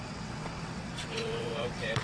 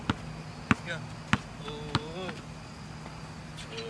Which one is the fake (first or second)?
first